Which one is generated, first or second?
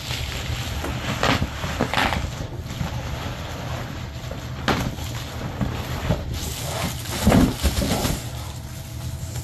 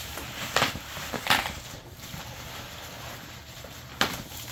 second